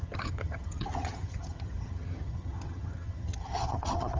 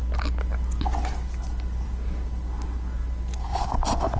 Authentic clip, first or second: second